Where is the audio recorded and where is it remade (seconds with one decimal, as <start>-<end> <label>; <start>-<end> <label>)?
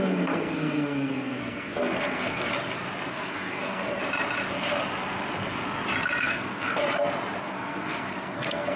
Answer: 0.0-2.5 remade; 2.5-3.1 recorded; 3.1-4.0 remade; 4.0-6.2 recorded; 6.2-6.8 remade; 6.8-7.4 recorded; 7.4-8.8 remade